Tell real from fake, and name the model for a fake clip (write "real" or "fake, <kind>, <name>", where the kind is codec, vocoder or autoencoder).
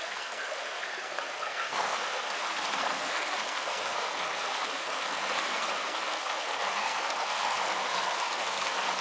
fake, codec, SNAC